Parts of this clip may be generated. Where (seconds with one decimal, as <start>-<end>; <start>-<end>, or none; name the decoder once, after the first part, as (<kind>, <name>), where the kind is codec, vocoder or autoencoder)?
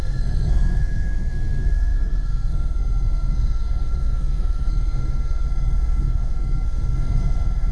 0.0-7.7 (codec, SNAC)